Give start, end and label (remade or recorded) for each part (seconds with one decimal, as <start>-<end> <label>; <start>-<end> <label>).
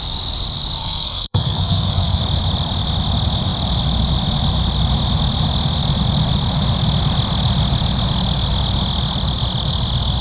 0.0-0.8 recorded; 0.8-2.2 remade; 2.2-10.2 recorded